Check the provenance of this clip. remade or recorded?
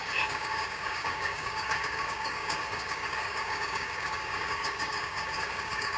remade